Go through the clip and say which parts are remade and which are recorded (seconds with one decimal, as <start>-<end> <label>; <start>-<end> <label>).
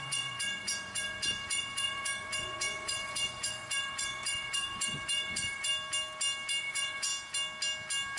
0.0-5.7 remade; 5.7-6.6 recorded; 6.6-7.1 remade; 7.1-8.2 recorded